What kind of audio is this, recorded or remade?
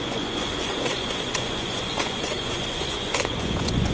remade